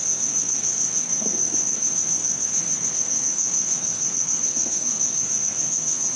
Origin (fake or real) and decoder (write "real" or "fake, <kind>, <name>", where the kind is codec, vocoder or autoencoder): fake, codec, SNAC